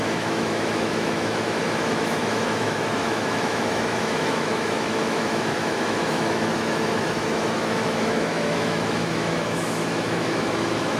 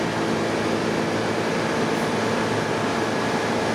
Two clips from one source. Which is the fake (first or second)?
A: first